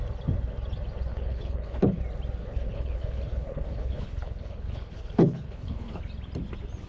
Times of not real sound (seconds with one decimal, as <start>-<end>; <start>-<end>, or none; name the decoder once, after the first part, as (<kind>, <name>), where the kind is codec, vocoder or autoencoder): 1.1-2.0 (codec, HILCodec); 2.4-6.0